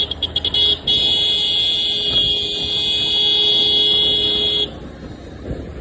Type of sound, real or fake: real